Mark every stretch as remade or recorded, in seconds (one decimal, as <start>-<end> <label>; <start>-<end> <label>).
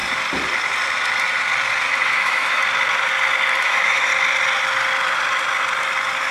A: 0.0-2.0 recorded; 2.0-2.6 remade; 2.6-3.6 recorded; 3.6-4.1 remade; 4.1-6.3 recorded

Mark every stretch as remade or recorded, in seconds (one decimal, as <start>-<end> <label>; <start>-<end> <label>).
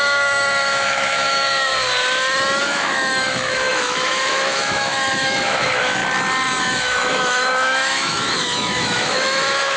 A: 0.0-1.7 remade; 1.7-2.6 recorded; 2.6-6.0 remade; 6.0-6.6 recorded; 6.6-9.8 remade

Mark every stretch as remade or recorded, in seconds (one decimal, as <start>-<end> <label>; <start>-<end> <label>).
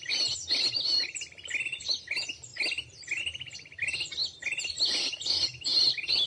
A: 0.0-6.3 recorded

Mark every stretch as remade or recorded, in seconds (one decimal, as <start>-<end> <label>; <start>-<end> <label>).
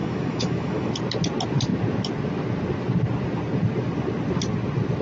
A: 0.0-0.9 remade; 0.9-5.0 recorded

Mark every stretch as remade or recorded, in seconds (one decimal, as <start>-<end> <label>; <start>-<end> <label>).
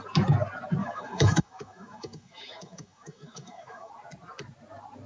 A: 0.0-0.8 recorded; 0.8-3.9 remade; 3.9-5.1 recorded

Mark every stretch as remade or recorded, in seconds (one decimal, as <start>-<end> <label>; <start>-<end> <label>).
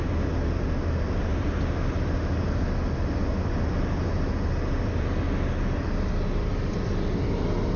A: 0.0-7.8 recorded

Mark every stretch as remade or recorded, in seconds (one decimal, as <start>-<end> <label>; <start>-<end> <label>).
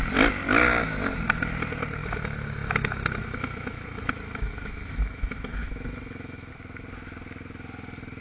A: 0.0-2.0 recorded; 2.0-6.5 remade; 6.5-8.2 recorded